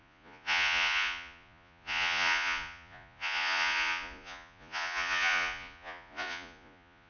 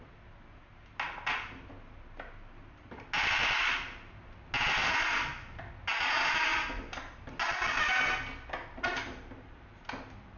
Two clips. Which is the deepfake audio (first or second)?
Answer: first